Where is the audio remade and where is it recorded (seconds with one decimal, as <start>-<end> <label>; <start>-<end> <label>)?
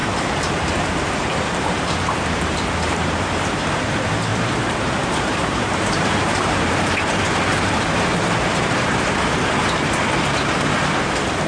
0.0-3.8 remade; 3.8-4.3 recorded; 4.3-6.6 remade; 6.6-7.1 recorded; 7.1-9.4 remade; 9.4-11.5 recorded